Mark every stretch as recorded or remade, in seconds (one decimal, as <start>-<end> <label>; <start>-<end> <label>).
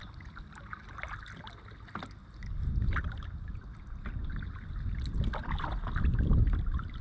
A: 0.0-2.2 recorded; 2.2-6.4 remade; 6.4-7.0 recorded